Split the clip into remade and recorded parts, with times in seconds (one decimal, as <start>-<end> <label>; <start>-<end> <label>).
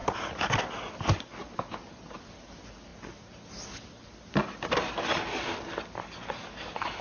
0.0-7.0 recorded